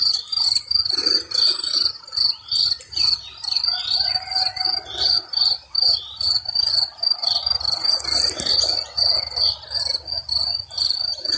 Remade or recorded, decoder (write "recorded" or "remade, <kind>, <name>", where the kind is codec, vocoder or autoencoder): recorded